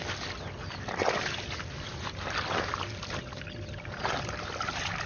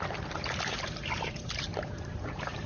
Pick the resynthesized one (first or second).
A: second